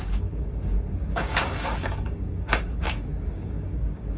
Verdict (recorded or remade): remade